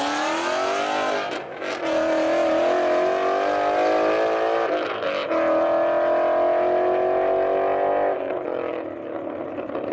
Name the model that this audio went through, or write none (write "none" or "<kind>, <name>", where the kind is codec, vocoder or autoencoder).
none